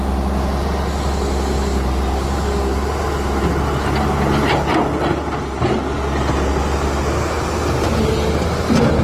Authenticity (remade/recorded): recorded